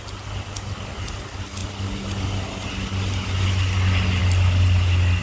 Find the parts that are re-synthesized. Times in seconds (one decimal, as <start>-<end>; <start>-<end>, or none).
none